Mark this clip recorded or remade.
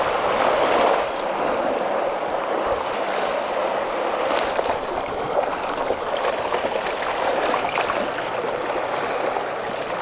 recorded